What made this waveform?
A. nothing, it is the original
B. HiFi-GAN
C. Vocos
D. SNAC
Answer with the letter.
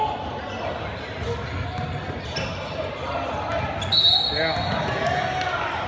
A